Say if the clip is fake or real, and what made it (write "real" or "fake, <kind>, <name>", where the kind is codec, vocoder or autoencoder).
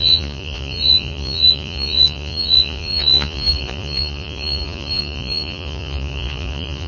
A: fake, vocoder, Vocos